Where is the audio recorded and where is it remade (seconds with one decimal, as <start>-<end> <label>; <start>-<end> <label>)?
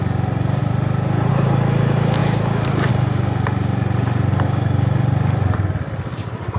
0.0-0.6 recorded; 0.6-1.3 remade; 1.3-2.2 recorded; 2.2-2.9 remade; 2.9-6.6 recorded